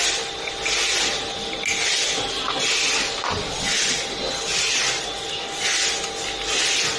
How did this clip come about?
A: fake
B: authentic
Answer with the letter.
B